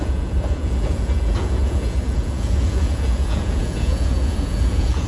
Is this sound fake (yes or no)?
yes